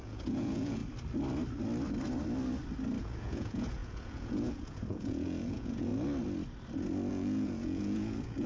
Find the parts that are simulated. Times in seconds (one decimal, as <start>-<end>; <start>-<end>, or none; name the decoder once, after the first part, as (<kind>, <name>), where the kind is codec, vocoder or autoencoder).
0.0-0.8 (vocoder, Vocos); 3.0-5.9; 7.1-8.5